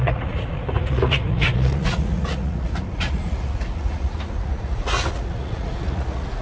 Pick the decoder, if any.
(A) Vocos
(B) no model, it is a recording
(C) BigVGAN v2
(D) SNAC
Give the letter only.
A